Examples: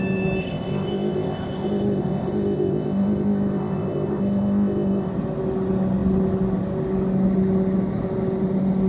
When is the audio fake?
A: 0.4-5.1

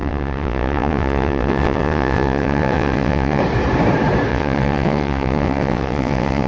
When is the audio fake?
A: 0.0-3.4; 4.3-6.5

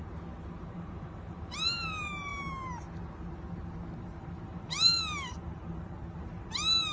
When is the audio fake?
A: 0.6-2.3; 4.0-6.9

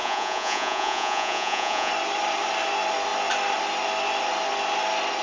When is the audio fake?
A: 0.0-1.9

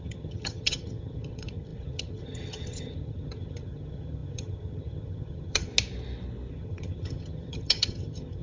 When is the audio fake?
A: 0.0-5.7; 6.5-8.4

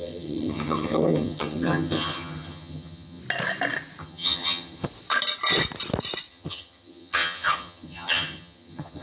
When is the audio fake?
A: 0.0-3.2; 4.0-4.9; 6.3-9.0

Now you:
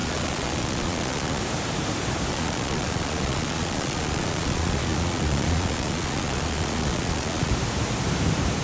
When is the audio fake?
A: 0.0-1.4; 2.3-7.5